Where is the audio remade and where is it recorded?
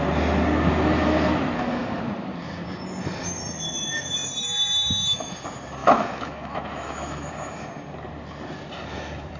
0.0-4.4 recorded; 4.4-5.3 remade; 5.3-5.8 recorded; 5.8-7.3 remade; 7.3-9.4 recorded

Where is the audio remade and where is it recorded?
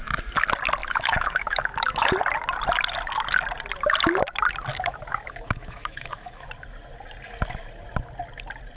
0.0-0.8 recorded; 0.8-2.1 remade; 2.1-4.7 recorded; 4.7-6.5 remade; 6.5-8.8 recorded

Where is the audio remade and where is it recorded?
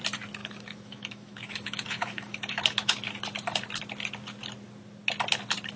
0.0-0.4 recorded; 0.4-3.1 remade; 3.1-5.8 recorded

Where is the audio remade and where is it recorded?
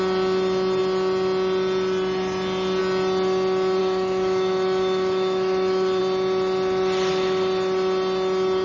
0.0-3.8 recorded; 3.8-6.0 remade; 6.0-8.6 recorded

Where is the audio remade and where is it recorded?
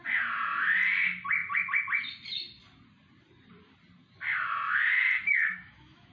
0.0-5.4 recorded; 5.4-6.1 remade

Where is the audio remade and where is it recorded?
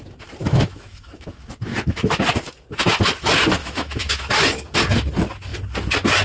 0.0-0.4 recorded; 0.4-2.2 remade; 2.2-3.6 recorded; 3.6-4.3 remade; 4.3-6.2 recorded